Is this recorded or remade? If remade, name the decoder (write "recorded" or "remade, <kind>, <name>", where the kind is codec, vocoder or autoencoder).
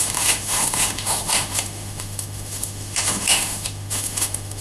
remade, autoencoder, DAC-VAE